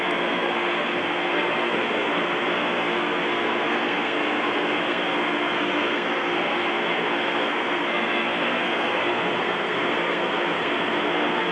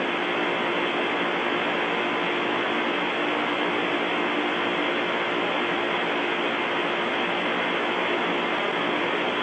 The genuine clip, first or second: second